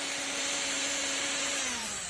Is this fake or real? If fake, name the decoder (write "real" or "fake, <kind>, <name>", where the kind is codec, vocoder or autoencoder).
fake, vocoder, BigVGAN v2